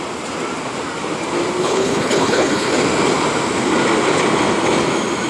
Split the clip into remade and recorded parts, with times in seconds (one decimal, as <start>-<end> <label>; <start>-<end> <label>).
0.0-1.6 recorded; 1.6-2.7 remade; 2.7-5.3 recorded